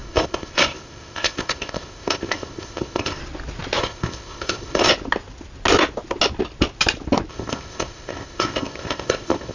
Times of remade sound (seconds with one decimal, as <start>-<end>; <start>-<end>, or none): 0.0-3.2; 3.8-4.9; 7.3-9.5

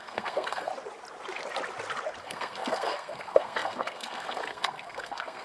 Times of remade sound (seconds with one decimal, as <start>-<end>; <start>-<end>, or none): 0.0-0.7; 2.2-5.4

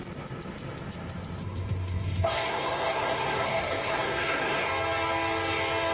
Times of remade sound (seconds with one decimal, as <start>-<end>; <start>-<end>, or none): 1.4-4.7

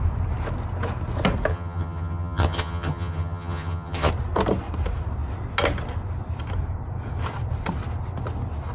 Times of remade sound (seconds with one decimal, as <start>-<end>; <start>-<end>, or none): 1.5-4.1

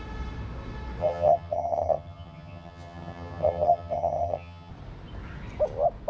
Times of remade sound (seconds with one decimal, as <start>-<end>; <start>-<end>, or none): 1.0-4.7